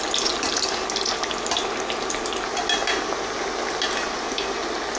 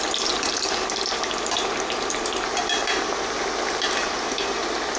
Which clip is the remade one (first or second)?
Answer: second